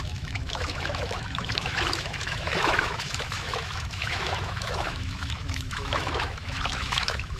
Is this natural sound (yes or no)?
no